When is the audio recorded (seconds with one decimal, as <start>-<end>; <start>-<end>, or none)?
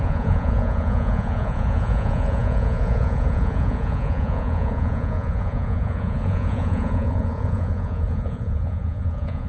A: none